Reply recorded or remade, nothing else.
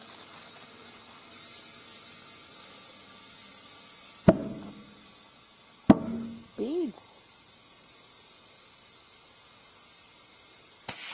recorded